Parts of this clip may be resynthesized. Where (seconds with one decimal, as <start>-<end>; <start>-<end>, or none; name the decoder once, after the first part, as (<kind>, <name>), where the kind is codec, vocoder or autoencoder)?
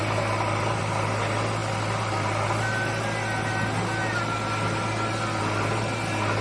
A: none